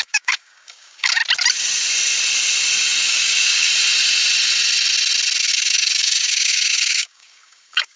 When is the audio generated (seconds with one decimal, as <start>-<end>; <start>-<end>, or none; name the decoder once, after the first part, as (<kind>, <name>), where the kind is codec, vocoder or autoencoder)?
0.0-1.2 (codec, DAC); 3.1-3.7; 5.5-8.0